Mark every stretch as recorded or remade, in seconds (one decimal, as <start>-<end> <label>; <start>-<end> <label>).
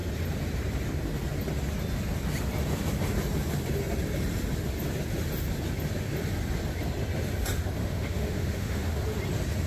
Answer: 0.0-7.8 recorded; 7.8-8.9 remade; 8.9-9.7 recorded